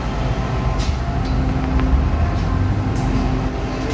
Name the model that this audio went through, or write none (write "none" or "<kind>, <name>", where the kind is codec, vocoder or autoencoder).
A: none